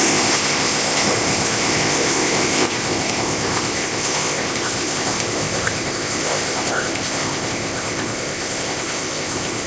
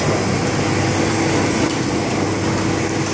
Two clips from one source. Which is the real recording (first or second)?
second